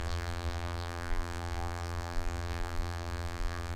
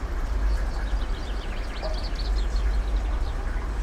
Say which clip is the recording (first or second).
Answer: second